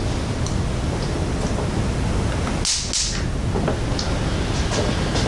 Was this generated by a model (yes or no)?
no